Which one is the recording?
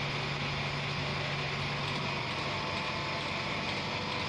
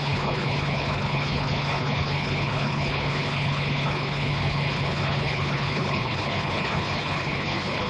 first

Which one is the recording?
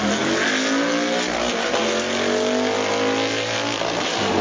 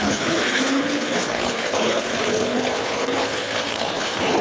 first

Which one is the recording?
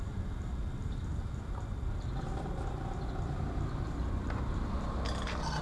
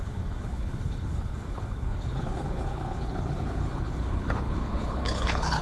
first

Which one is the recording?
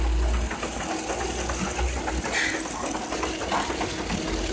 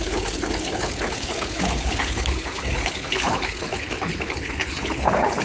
first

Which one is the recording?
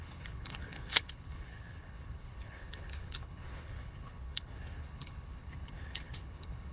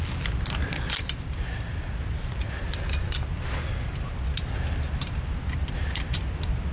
second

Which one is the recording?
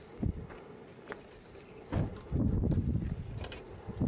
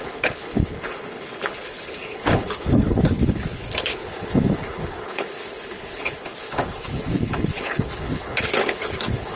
first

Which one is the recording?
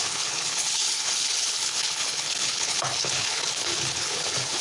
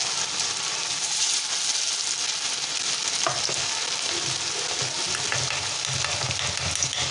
second